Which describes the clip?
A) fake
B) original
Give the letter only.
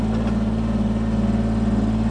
B